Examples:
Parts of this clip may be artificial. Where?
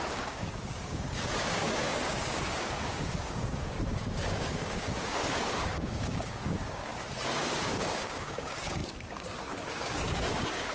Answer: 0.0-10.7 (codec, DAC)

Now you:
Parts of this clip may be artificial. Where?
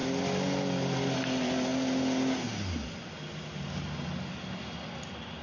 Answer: none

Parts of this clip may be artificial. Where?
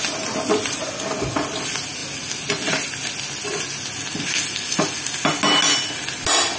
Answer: none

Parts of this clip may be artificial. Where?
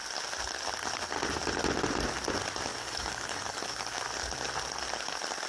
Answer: 2.7-4.0 (codec, DAC)